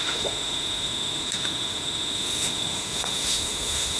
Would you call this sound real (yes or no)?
no